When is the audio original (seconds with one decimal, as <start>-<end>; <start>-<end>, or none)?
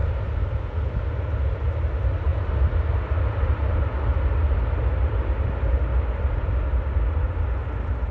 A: 0.0-8.1